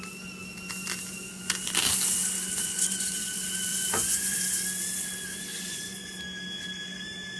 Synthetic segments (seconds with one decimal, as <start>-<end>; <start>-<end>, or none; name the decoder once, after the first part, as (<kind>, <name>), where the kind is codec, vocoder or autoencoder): 2.6-3.3 (vocoder, Vocos); 3.7-4.4; 5.5-6.1